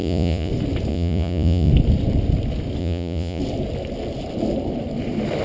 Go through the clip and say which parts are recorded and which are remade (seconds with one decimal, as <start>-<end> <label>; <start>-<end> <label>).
0.0-0.5 remade; 0.5-0.9 recorded; 0.9-1.7 remade; 1.7-2.8 recorded; 2.8-3.4 remade; 3.4-5.4 recorded